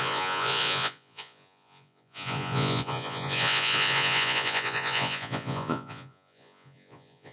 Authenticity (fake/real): fake